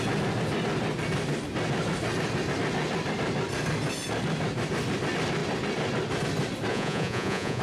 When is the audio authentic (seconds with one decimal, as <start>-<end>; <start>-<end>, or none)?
0.0-6.7